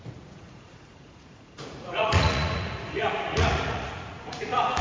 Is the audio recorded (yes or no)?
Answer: no